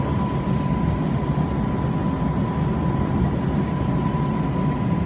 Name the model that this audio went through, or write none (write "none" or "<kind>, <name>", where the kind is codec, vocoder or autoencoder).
none